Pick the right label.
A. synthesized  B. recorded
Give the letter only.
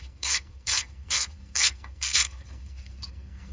A